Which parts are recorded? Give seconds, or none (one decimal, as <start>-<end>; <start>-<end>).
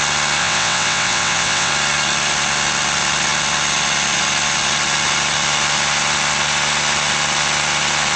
0.0-0.4; 1.7-8.2